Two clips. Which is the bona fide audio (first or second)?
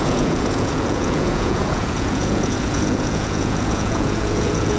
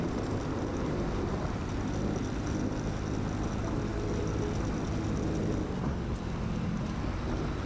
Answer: second